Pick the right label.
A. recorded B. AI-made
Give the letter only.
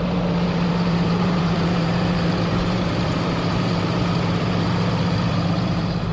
B